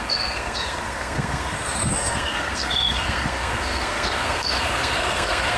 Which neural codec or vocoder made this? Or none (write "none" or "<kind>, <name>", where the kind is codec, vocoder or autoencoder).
codec, SNAC